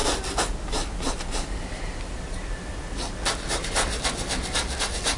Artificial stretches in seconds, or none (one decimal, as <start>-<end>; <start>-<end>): none